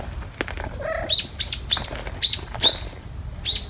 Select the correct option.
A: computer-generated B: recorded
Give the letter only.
B